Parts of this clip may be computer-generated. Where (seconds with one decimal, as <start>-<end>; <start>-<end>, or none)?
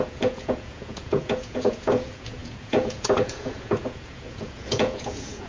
0.0-5.5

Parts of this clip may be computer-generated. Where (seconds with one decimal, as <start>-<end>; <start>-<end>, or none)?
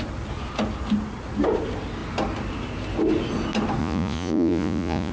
3.8-5.1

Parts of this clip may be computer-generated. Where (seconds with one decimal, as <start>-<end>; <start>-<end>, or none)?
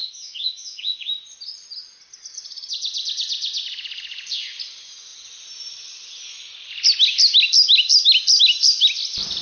0.0-1.1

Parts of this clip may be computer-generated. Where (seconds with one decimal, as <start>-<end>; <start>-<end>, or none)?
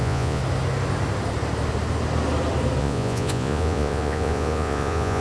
0.0-0.4; 2.8-5.2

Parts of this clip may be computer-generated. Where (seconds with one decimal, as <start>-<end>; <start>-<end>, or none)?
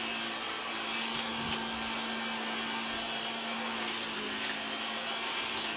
none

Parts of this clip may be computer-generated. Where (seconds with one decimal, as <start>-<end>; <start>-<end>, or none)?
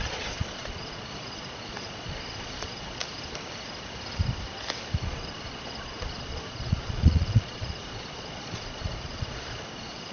0.0-3.0; 5.0-10.1